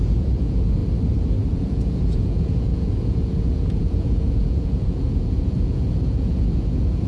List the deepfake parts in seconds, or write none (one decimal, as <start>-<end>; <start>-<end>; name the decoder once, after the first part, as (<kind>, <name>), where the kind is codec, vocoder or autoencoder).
0.0-0.8 (vocoder, Vocos); 1.5-7.1